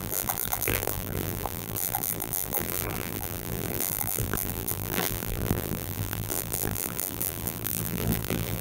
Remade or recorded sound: remade